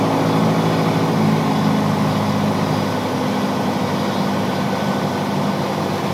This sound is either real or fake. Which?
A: real